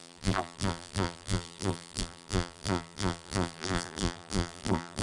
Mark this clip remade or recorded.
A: remade